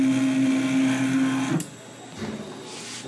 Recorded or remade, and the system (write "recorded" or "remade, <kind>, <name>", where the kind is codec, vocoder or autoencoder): recorded